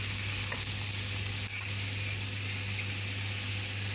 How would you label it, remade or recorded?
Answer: recorded